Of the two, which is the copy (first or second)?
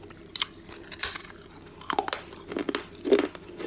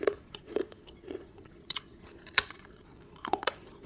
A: second